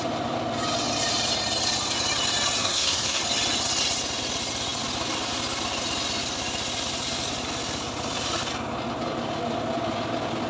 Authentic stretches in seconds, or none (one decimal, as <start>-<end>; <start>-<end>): 0.0-2.6; 3.2-10.5